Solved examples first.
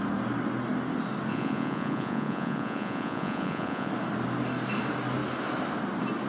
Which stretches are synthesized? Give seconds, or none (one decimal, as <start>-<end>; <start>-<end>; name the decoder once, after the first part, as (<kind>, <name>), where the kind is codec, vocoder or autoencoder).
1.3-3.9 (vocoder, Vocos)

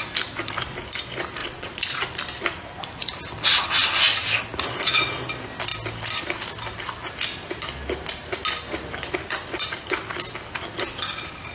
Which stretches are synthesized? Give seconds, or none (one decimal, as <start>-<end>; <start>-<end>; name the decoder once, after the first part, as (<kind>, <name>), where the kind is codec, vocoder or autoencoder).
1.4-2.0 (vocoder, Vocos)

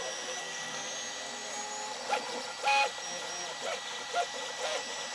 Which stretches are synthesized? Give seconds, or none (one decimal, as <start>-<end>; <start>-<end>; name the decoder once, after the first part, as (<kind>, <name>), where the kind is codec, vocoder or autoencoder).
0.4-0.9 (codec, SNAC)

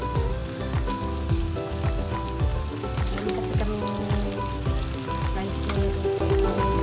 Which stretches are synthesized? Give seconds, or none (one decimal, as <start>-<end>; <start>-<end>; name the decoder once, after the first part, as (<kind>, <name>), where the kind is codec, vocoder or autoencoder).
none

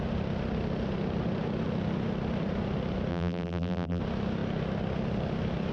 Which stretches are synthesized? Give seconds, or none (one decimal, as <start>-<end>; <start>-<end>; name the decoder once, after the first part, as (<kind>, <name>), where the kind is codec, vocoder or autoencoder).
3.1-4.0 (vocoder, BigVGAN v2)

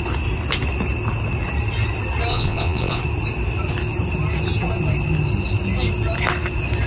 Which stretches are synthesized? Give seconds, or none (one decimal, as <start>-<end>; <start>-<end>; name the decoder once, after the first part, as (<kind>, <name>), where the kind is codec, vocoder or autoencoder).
2.3-3.0 (vocoder, Vocos)